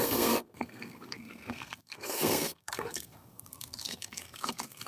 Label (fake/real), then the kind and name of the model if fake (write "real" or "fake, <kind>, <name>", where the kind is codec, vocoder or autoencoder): fake, codec, SNAC